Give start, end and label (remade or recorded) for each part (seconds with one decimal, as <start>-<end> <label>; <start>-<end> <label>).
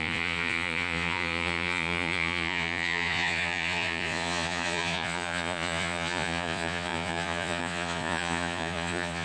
0.0-9.2 remade